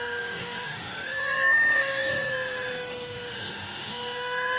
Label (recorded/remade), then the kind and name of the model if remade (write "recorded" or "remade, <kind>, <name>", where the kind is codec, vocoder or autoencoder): remade, autoencoder, DAC-VAE